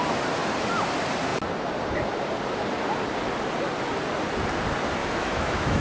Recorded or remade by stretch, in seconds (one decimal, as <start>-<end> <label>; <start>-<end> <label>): 0.0-5.0 recorded; 5.0-5.8 remade